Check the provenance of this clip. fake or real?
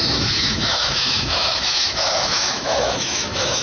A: fake